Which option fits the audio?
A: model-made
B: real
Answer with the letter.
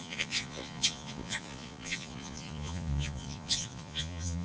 A